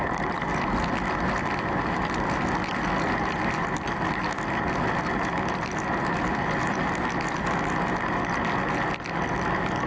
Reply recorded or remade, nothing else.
recorded